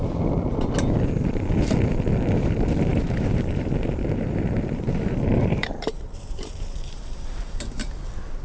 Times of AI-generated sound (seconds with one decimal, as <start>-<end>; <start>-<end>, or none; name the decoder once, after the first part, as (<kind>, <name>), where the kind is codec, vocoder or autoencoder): 2.9-7.6 (vocoder, BigVGAN v2)